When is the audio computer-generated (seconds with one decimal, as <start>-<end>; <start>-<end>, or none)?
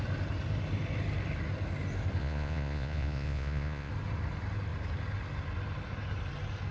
2.2-3.9